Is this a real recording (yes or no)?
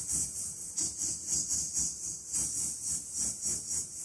yes